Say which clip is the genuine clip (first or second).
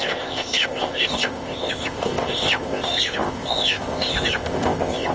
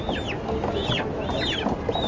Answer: second